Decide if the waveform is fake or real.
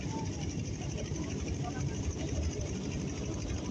fake